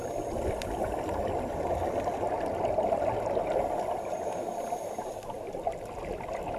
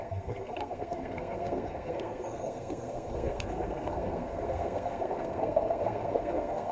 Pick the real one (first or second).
first